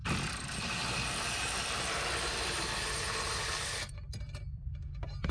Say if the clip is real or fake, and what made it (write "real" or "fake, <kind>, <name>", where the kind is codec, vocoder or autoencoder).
fake, vocoder, BigVGAN v2